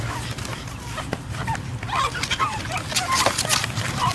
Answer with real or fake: real